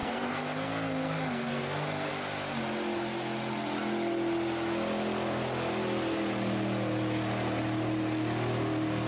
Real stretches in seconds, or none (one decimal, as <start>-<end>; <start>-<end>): 2.1-9.1